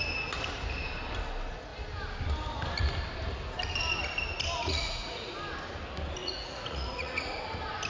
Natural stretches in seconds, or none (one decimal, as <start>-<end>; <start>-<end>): 0.0-4.6; 5.3-6.2; 7.3-7.9